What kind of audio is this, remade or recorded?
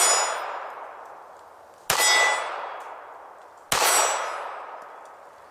recorded